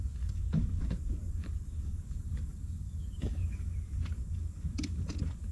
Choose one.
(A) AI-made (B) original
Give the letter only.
A